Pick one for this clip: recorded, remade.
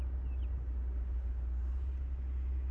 recorded